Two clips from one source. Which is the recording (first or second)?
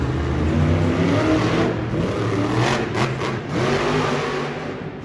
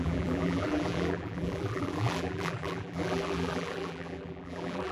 first